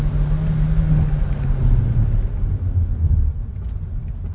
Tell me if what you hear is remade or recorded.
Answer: recorded